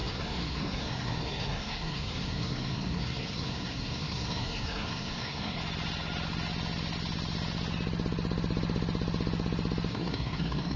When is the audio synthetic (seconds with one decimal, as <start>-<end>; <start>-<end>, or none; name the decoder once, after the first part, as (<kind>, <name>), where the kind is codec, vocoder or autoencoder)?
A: 0.0-5.6 (codec, SNAC); 9.9-10.8